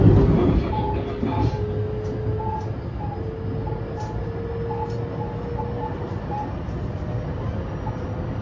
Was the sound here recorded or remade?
recorded